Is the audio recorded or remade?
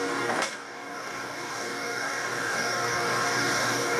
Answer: remade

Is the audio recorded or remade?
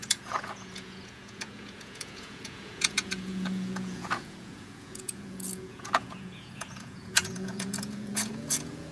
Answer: remade